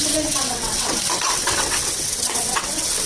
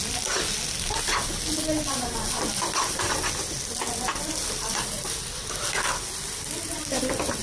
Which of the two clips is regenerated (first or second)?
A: first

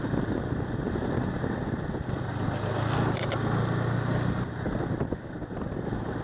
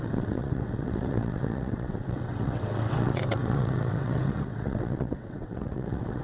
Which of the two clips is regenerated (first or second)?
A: second